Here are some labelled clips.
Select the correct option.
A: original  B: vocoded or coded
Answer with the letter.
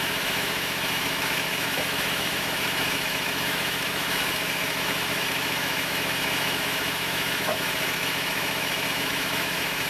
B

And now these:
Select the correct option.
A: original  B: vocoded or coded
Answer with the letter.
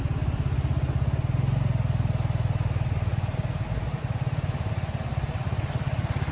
A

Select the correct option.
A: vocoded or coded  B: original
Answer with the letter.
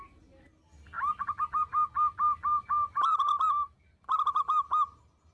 B